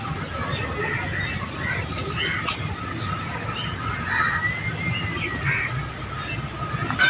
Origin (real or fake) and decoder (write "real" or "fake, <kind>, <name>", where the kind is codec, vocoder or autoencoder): real